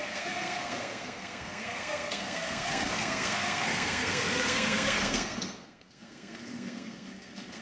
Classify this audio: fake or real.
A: fake